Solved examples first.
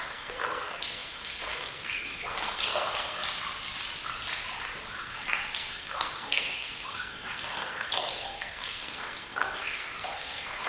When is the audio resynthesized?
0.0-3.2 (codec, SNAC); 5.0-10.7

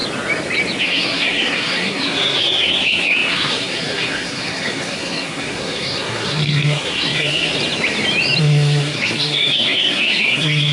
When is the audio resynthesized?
0.8-7.5 (codec, SNAC); 8.4-10.7

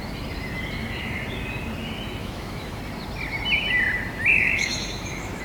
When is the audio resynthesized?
2.2-2.8 (autoencoder, DAC-VAE); 4.3-5.4

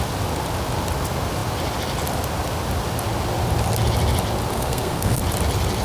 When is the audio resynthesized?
4.5-5.2 (codec, SNAC)

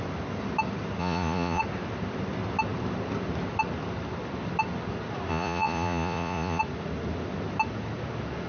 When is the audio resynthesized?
1.0-1.6 (vocoder, Vocos); 5.3-6.6